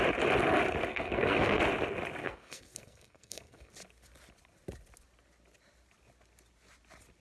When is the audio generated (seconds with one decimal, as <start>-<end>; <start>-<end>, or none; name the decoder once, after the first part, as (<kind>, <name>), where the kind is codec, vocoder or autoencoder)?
0.9-1.6 (codec, SNAC); 2.2-3.7

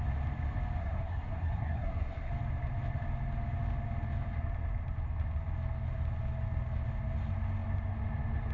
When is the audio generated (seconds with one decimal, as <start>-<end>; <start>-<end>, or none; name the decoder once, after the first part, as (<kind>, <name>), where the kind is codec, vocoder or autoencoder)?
0.8-2.3 (codec, SNAC)

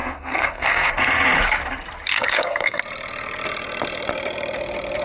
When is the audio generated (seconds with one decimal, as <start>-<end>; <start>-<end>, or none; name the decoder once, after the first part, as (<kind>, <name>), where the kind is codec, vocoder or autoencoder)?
0.0-0.9 (codec, SNAC); 2.1-2.8

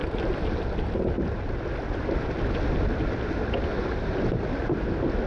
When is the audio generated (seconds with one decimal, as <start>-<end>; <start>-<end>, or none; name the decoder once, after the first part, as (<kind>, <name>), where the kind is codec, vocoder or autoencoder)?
none

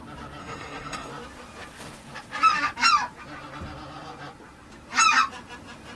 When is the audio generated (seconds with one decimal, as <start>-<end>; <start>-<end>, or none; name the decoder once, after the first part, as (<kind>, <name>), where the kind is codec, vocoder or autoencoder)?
0.4-1.1 (codec, SNAC)

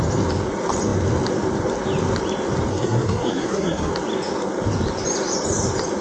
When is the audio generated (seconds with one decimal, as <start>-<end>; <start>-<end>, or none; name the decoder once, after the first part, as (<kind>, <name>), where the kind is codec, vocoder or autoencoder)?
2.7-3.9 (codec, SNAC)

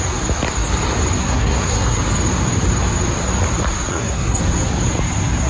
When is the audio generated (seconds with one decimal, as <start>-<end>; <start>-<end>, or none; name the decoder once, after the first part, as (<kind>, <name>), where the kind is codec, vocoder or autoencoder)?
1.2-2.0 (codec, SNAC); 3.9-4.4

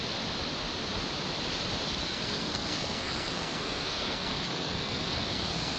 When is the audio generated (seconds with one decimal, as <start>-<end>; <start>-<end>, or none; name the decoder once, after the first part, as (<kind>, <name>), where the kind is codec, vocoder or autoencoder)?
2.0-5.8 (codec, SNAC)